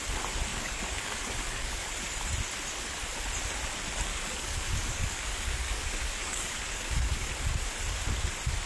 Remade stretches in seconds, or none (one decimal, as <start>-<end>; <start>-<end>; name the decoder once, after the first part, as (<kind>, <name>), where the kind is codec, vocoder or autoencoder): 0.5-1.9 (codec, DAC); 4.1-7.3